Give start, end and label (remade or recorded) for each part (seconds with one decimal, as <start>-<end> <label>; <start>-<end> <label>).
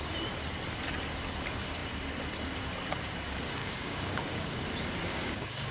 0.0-3.6 recorded; 3.6-4.6 remade; 4.6-5.1 recorded; 5.1-5.7 remade